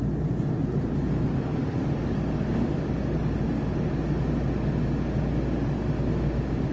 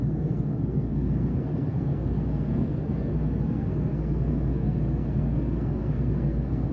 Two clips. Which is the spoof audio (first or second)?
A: second